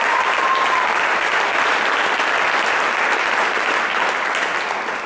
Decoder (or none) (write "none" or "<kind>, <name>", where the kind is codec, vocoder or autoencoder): vocoder, BigVGAN v2